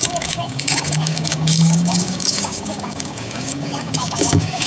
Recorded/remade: remade